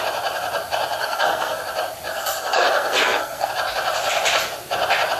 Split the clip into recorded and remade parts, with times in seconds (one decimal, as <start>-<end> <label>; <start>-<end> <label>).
0.0-1.0 recorded; 1.0-1.6 remade; 1.6-2.1 recorded; 2.1-3.5 remade; 3.5-5.2 recorded